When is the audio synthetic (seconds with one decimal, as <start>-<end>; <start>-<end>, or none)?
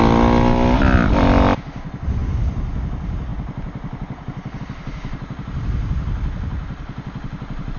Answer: none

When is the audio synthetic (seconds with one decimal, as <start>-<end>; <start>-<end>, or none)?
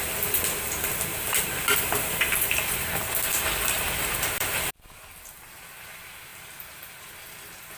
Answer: 1.1-4.7; 6.3-7.0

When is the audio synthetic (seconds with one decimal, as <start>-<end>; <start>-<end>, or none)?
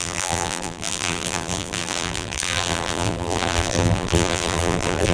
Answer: 0.0-5.1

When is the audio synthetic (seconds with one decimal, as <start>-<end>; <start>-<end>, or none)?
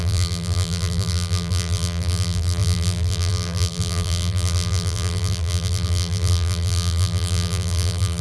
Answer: 0.0-8.2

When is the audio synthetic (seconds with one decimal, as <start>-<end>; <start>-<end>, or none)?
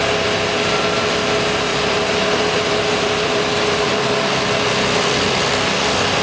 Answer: 1.7-5.4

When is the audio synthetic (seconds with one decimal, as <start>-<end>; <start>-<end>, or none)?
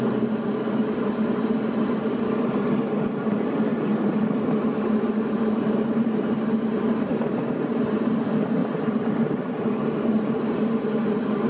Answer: 3.7-4.5; 8.6-9.6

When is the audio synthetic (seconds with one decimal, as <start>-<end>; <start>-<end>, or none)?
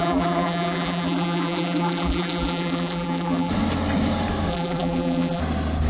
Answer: 0.0-3.5; 4.5-5.4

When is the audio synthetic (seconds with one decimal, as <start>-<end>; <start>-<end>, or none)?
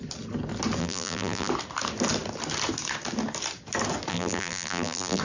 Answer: 0.8-1.5; 4.1-5.2